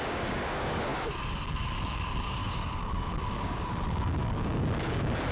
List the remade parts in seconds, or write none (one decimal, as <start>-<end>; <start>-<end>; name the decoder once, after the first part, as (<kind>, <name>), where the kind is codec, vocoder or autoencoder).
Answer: 0.0-5.3 (codec, DAC)